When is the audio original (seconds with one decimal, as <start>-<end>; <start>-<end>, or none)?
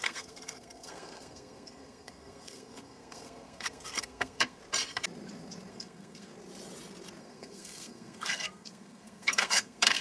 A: 4.6-5.7; 6.3-7.2